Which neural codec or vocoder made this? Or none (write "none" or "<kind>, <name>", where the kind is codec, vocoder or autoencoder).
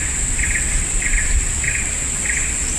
none